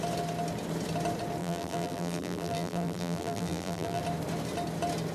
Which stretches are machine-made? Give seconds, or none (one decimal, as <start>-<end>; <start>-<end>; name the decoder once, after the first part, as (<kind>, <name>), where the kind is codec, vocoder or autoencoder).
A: 1.4-4.0 (vocoder, BigVGAN v2)

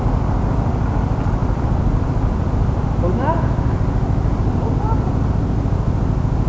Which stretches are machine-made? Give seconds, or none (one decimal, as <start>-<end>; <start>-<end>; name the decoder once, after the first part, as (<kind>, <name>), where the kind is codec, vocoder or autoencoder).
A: 1.4-5.3 (vocoder, BigVGAN v2)

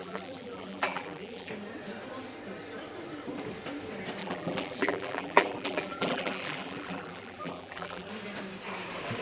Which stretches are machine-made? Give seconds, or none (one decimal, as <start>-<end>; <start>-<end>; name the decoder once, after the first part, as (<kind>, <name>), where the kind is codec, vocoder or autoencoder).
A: 0.0-1.5 (vocoder, BigVGAN v2); 4.2-8.1

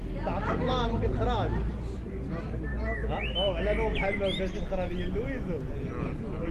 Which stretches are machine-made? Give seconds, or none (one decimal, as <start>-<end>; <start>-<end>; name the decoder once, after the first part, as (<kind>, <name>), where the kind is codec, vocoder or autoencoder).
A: none

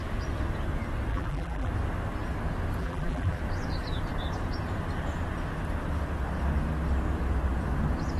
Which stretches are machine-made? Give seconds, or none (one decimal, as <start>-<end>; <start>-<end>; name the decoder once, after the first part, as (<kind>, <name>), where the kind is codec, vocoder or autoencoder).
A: 1.1-1.7 (vocoder, BigVGAN v2); 2.8-3.4

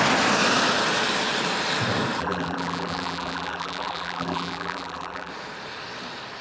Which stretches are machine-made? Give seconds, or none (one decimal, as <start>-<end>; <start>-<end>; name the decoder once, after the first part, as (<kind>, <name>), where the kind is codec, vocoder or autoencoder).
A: 2.2-5.3 (vocoder, BigVGAN v2)